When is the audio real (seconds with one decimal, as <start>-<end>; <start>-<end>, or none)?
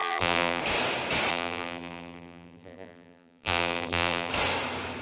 0.6-1.3; 4.3-5.0